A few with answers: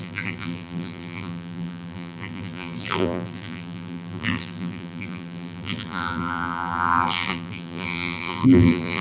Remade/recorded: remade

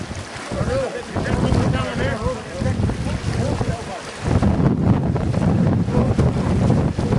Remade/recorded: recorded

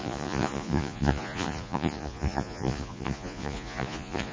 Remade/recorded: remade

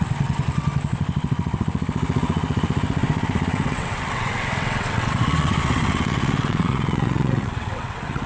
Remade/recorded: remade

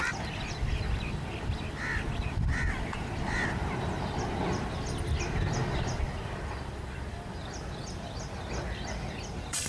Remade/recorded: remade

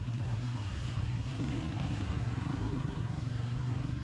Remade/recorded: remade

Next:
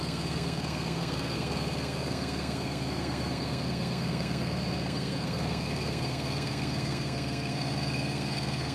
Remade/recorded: remade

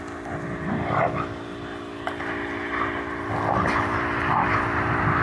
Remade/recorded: recorded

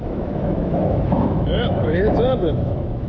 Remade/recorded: remade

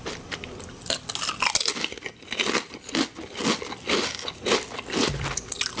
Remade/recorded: recorded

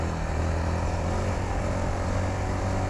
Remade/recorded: recorded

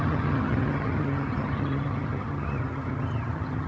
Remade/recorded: remade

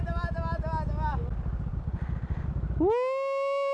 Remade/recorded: recorded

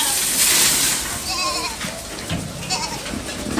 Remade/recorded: recorded